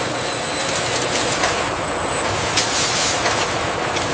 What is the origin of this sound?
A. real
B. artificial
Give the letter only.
A